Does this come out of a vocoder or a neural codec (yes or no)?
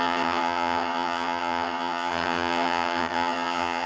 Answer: yes